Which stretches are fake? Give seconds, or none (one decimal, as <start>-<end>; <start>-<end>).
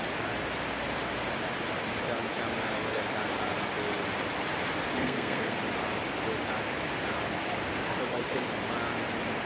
5.0-5.6